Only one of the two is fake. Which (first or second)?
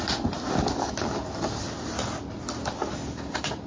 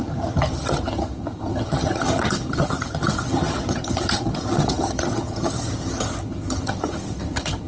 second